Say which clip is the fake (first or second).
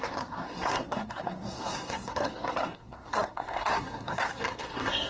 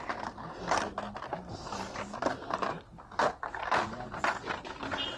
first